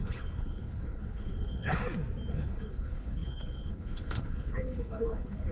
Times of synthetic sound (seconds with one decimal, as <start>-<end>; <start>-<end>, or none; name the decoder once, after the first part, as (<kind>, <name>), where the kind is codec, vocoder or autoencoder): 0.0-1.8 (codec, HILCodec); 2.3-5.5